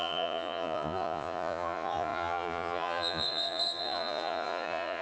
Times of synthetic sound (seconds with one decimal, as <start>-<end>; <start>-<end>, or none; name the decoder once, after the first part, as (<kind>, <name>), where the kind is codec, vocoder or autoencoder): 0.0-5.0 (vocoder, Vocos)